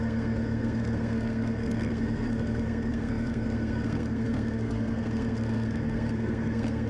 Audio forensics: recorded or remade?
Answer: remade